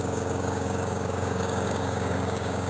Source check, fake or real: fake